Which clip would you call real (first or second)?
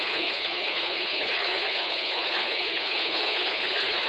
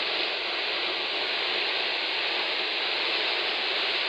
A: second